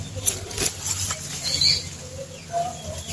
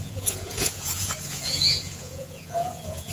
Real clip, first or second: first